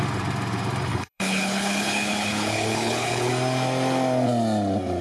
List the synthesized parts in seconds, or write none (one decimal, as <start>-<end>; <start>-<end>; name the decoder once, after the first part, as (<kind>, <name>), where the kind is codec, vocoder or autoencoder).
0.9-3.3 (codec, HILCodec)